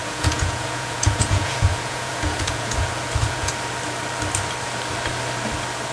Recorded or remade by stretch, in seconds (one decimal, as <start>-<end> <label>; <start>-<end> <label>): 0.0-3.5 remade; 3.5-5.9 recorded